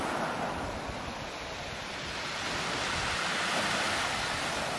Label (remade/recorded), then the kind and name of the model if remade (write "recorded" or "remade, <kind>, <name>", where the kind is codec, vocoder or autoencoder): recorded